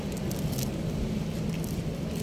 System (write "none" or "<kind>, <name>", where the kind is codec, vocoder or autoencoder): none